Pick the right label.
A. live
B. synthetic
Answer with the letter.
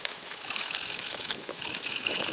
B